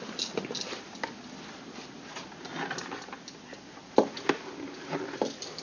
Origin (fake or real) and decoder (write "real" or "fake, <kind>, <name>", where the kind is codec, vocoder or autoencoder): real